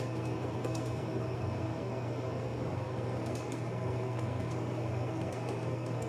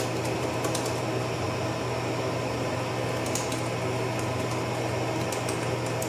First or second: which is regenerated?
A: first